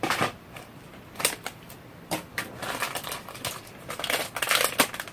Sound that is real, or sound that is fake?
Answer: fake